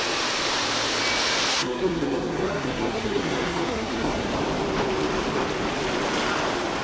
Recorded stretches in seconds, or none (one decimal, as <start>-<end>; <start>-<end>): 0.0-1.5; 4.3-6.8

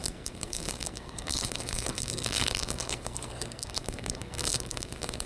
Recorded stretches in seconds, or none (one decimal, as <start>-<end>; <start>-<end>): none

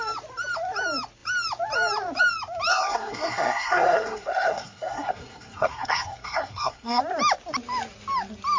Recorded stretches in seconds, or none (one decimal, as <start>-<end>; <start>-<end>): 0.0-2.7; 7.0-8.6

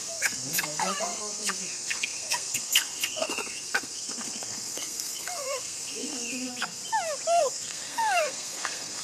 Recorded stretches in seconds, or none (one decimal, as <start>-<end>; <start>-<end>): 6.8-7.4